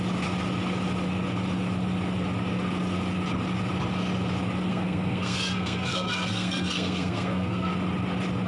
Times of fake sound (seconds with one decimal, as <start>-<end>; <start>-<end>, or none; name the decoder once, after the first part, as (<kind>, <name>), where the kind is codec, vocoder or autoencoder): 4.7-7.7 (codec, SNAC)

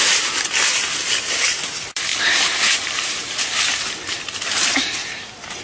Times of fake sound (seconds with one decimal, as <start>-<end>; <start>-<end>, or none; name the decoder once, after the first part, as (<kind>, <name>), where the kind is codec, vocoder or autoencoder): 0.0-5.6 (vocoder, BigVGAN v2)

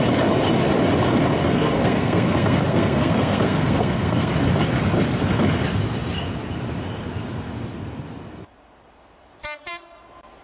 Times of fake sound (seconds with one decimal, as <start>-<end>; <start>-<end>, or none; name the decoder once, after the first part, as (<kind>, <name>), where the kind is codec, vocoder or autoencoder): 1.4-4.3 (codec, SNAC)

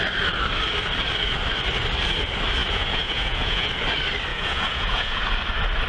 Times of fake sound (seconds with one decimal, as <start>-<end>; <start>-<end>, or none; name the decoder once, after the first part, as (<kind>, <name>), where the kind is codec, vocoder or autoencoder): 2.6-3.7 (vocoder, Vocos); 4.3-5.3

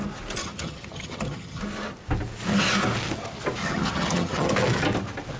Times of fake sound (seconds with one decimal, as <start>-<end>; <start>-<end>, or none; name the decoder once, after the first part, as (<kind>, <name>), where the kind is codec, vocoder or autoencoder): 0.4-1.6 (vocoder, HiFi-GAN); 3.6-4.5

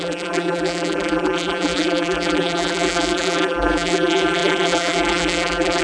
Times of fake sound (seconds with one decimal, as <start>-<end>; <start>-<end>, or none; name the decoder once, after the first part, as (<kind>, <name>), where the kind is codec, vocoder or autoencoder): 0.0-5.8 (vocoder, BigVGAN v2)

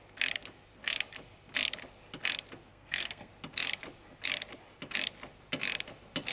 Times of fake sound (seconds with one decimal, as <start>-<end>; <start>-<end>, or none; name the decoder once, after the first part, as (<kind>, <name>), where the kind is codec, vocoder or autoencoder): 2.7-3.3 (codec, SNAC)